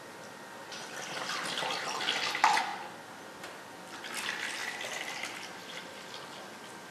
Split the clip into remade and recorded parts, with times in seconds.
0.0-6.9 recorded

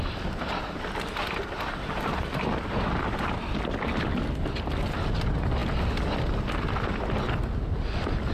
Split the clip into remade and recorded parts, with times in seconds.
0.0-8.3 recorded

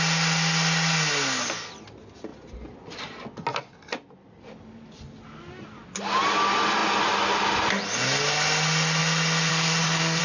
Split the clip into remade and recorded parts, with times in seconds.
0.0-9.5 recorded; 9.5-10.2 remade